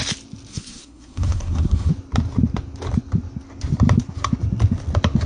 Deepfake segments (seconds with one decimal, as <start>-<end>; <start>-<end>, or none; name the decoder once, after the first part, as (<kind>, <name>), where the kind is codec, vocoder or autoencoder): 0.5-1.9 (codec, SNAC)